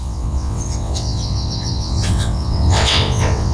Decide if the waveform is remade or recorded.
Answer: remade